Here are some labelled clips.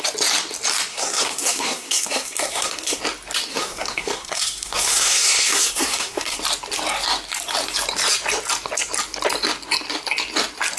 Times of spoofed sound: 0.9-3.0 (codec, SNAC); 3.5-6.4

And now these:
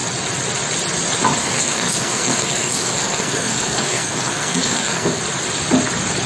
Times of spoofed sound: 1.4-5.2 (codec, SNAC)

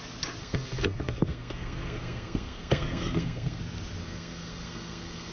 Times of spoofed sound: 0.4-3.6 (codec, SNAC); 4.0-5.3